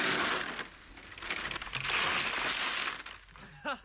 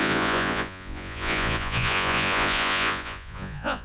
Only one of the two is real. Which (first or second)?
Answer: first